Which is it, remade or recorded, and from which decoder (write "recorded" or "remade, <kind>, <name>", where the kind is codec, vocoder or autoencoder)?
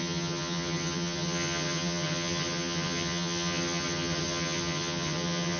remade, vocoder, HiFi-GAN